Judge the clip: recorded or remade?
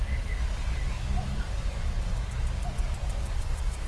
remade